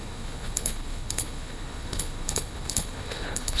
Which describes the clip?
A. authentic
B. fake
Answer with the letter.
B